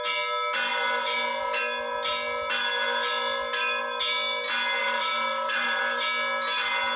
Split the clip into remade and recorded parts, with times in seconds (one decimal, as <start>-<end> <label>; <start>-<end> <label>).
0.0-4.8 recorded; 4.8-5.8 remade; 5.8-7.0 recorded